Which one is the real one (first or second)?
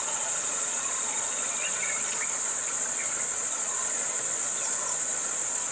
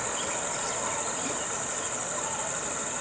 second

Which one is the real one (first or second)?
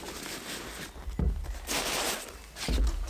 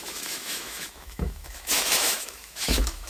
first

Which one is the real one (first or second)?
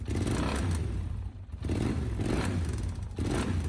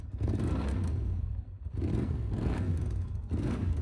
first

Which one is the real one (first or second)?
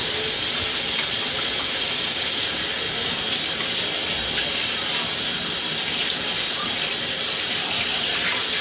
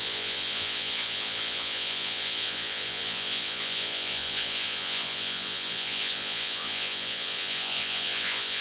first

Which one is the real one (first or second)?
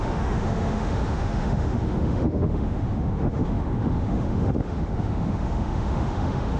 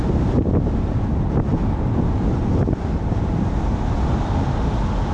second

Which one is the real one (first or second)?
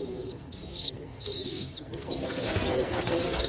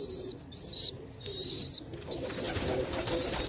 second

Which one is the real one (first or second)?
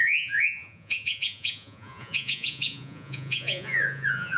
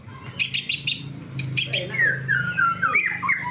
second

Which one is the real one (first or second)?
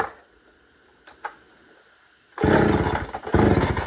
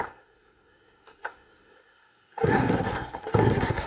first